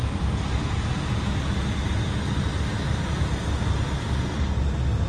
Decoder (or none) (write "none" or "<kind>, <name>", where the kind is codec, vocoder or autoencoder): none